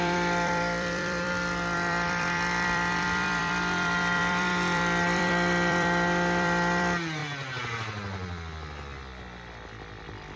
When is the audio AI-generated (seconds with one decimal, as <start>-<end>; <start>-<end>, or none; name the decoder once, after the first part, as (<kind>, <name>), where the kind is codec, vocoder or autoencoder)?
0.0-7.2 (vocoder, BigVGAN v2); 10.0-10.4